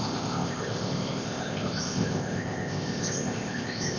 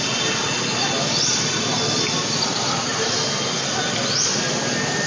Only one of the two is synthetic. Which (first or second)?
first